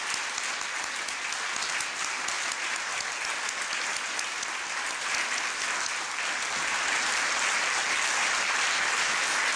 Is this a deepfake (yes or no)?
no